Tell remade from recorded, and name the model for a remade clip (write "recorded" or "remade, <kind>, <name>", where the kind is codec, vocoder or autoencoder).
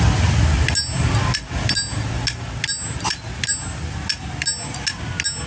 recorded